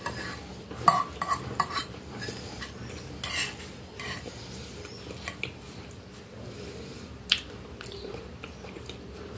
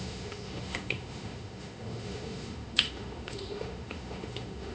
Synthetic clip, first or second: second